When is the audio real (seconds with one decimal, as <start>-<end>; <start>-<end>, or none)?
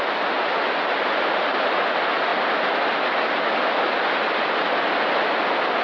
0.0-5.8